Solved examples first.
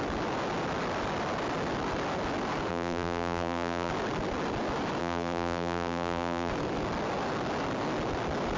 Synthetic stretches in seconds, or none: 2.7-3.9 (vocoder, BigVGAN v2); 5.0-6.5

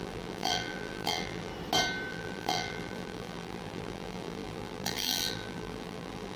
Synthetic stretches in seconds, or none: 0.0-1.5 (vocoder, BigVGAN v2); 2.1-6.4

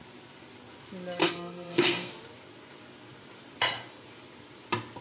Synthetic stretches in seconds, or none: 1.2-2.1 (codec, SNAC)

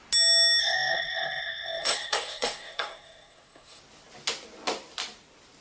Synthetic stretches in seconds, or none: 0.6-3.8 (codec, SNAC)

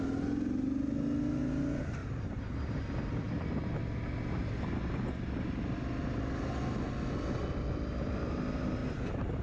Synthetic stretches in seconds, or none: 2.0-3.8 (vocoder, BigVGAN v2); 8.8-9.4

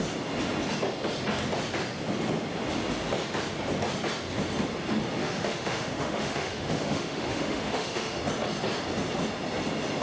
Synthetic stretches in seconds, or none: 5.2-8.2 (autoencoder, DAC-VAE)

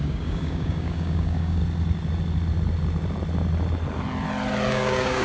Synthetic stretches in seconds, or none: 0.0-1.6 (codec, DAC); 4.7-5.2

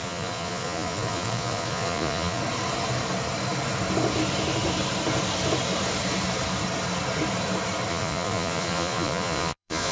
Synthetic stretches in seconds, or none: 0.0-2.4 (vocoder, Vocos); 7.9-9.9